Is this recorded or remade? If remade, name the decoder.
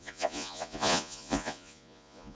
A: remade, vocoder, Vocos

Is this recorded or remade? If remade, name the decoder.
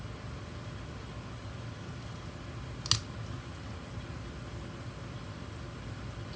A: recorded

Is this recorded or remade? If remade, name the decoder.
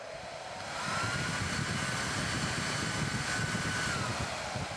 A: recorded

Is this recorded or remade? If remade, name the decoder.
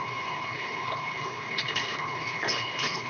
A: remade, codec, HILCodec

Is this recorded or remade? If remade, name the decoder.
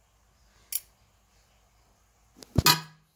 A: recorded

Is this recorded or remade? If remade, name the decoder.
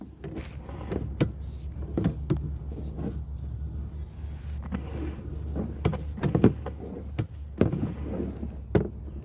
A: recorded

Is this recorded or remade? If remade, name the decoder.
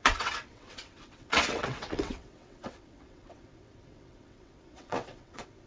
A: remade, vocoder, WaveNeXt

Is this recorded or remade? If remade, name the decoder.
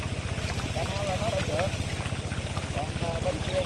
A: recorded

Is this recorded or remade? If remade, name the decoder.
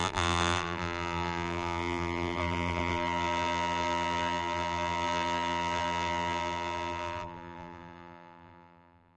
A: remade, vocoder, BigVGAN v2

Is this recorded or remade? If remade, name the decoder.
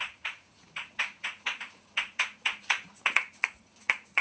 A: remade, vocoder, Vocos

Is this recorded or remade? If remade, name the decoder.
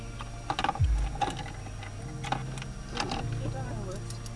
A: remade, vocoder, BigVGAN v2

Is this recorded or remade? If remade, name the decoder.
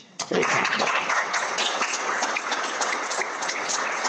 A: remade, vocoder, WaveNeXt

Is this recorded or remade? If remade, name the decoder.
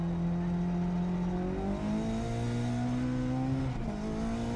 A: recorded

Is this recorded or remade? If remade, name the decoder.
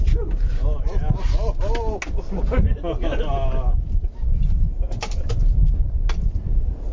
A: recorded